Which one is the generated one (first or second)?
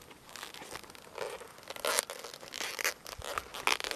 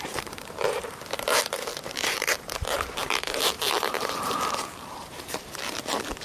second